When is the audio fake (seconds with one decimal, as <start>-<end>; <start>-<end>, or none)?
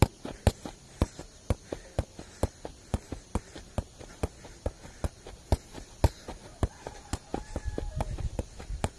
none